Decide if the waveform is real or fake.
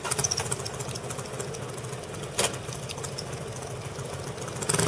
real